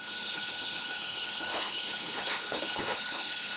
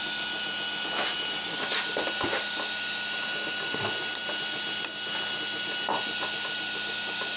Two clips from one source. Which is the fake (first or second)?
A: first